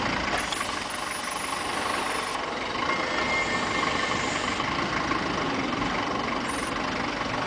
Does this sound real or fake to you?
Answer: real